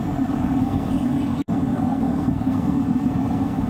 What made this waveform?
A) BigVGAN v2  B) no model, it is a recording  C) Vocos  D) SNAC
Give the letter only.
D